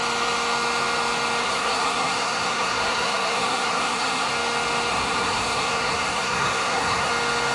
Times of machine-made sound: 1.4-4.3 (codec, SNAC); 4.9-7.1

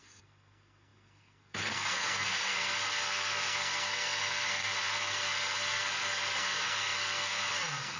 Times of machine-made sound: 0.0-8.0 (codec, SNAC)

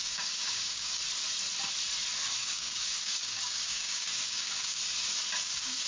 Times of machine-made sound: 0.0-1.0 (codec, DAC); 2.4-4.8; 5.4-5.9

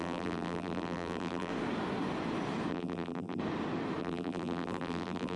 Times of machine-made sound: 0.0-1.5 (vocoder, BigVGAN v2); 2.7-3.4; 4.0-5.4

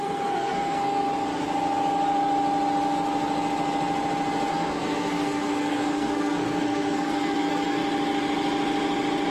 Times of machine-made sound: 0.0-1.1 (codec, SNAC); 4.5-7.8